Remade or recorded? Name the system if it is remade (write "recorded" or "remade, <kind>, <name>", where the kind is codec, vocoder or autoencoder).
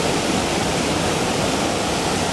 recorded